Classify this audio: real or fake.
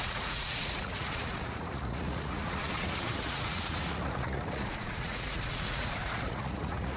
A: fake